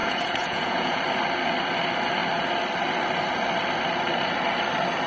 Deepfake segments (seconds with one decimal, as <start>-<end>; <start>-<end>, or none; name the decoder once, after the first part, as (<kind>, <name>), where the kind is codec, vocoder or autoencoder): 0.0-1.0 (vocoder, Vocos)